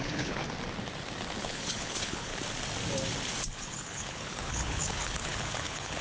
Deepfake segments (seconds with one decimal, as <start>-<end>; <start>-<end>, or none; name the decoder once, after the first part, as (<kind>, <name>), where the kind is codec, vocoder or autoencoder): 0.0-0.4 (codec, HILCodec); 1.4-2.3; 3.5-6.0